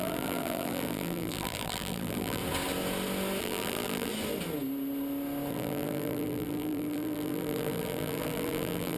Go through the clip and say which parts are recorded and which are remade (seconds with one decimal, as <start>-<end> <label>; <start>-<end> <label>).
0.0-2.4 remade; 2.4-3.4 recorded; 3.4-4.1 remade; 4.1-5.5 recorded; 5.5-9.0 remade